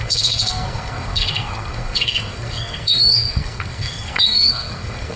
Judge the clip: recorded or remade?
remade